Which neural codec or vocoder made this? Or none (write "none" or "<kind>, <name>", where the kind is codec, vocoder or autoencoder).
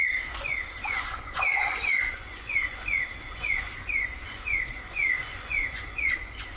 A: vocoder, Vocos